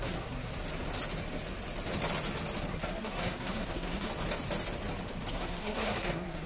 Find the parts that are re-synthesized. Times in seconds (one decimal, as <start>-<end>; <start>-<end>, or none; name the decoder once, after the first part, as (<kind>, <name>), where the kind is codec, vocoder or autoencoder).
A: 0.0-0.5 (codec, SNAC); 2.7-4.1; 5.3-6.5